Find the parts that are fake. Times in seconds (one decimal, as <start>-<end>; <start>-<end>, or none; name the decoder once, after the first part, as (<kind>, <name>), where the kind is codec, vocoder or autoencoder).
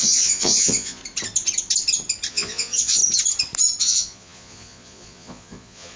0.0-1.0 (vocoder, Vocos); 2.3-3.0; 3.8-6.0